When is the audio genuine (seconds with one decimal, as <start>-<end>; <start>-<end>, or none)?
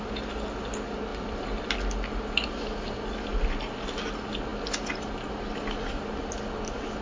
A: 0.0-1.1; 1.6-7.0